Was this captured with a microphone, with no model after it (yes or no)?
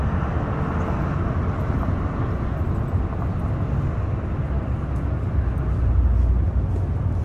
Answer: yes